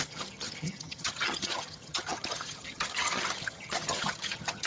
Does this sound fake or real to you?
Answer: fake